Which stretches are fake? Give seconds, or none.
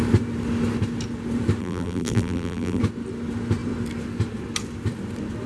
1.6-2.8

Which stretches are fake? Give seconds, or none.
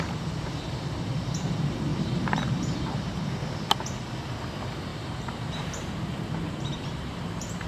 1.9-3.7; 4.9-7.7